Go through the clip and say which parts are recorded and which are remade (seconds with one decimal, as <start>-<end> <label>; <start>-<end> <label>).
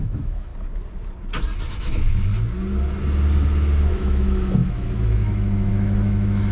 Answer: 0.0-0.5 remade; 0.5-1.7 recorded; 1.7-2.3 remade; 2.3-3.9 recorded; 3.9-6.5 remade